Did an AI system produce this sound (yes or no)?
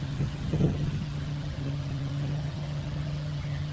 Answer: yes